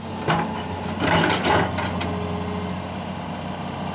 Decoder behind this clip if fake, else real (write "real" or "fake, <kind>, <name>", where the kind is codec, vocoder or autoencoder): real